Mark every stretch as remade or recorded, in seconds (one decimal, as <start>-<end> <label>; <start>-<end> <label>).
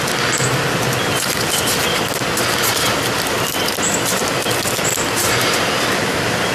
0.0-4.9 recorded; 4.9-6.1 remade; 6.1-6.5 recorded